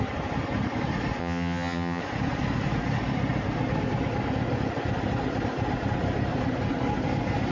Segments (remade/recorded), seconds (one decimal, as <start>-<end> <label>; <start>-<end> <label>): 0.0-1.2 recorded; 1.2-2.0 remade; 2.0-7.5 recorded